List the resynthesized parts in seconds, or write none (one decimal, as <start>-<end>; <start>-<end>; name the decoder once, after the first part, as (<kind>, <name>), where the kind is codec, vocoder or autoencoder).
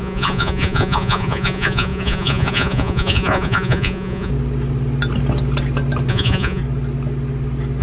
0.0-4.3 (vocoder, Vocos); 6.1-6.6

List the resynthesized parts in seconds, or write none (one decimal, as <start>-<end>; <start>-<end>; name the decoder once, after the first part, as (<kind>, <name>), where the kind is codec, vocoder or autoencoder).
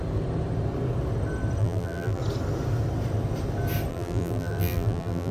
1.6-2.2 (vocoder, BigVGAN v2); 3.9-5.3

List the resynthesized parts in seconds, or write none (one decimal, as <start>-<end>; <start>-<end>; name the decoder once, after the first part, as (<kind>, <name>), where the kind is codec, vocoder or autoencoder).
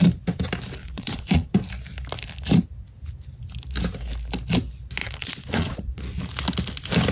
0.8-1.6 (vocoder, Vocos); 5.0-6.0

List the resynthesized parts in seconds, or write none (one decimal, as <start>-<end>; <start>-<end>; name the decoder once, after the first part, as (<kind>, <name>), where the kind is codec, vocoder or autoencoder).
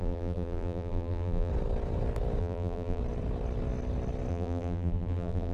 0.0-1.5 (vocoder, BigVGAN v2); 2.4-3.0; 4.3-5.5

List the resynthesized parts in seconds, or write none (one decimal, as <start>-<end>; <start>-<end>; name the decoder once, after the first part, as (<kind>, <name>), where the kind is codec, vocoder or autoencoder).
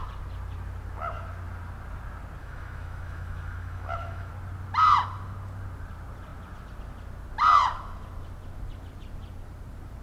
2.4-4.3 (autoencoder, DAC-VAE)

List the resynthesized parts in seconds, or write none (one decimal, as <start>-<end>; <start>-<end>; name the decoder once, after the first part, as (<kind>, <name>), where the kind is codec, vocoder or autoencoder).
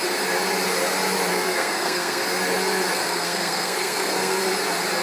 1.3-2.2 (codec, SNAC); 2.9-4.4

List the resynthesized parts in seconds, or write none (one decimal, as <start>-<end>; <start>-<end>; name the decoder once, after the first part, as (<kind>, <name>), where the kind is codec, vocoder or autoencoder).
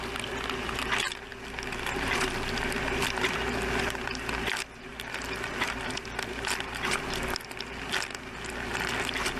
none